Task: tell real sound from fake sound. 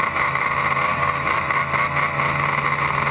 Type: real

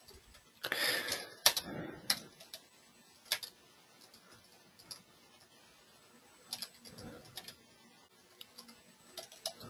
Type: real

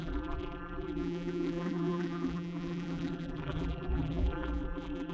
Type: fake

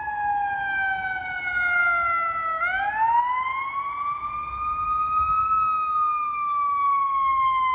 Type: real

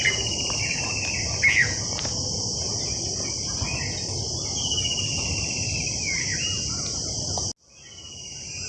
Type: real